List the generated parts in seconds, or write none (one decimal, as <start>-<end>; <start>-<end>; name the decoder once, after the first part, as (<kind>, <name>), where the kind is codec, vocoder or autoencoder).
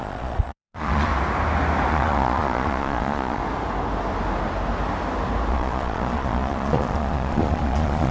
0.0-1.1 (vocoder, Vocos); 1.9-3.4; 5.5-8.1